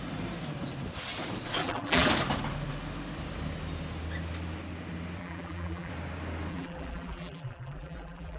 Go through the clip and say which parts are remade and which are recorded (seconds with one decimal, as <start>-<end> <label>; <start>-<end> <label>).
0.0-1.6 recorded; 1.6-2.1 remade; 2.1-5.2 recorded; 5.2-5.9 remade; 5.9-6.5 recorded; 6.5-8.4 remade